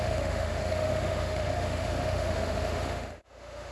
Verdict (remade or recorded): remade